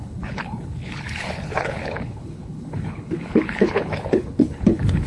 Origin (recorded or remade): remade